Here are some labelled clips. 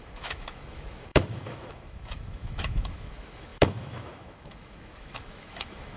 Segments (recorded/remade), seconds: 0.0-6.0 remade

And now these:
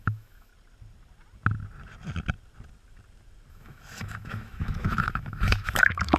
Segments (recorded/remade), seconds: 0.0-0.5 remade; 0.5-3.5 recorded; 3.5-6.2 remade

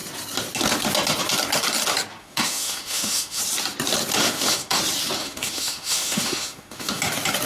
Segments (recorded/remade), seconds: 0.0-2.2 recorded; 2.2-3.4 remade; 3.4-4.2 recorded; 4.2-4.8 remade; 4.8-5.2 recorded; 5.2-7.0 remade; 7.0-7.5 recorded

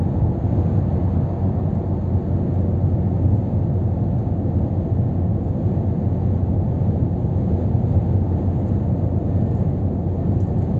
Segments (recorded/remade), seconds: 0.0-10.8 recorded

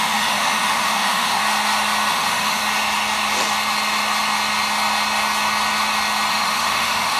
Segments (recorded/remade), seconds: 0.0-1.4 remade; 1.4-2.1 recorded; 2.1-2.6 remade; 2.6-6.3 recorded; 6.3-7.2 remade